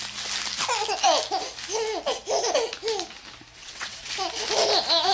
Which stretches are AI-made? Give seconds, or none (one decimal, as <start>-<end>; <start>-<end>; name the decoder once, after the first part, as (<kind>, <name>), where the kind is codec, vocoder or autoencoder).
3.6-4.1 (vocoder, WaveNeXt)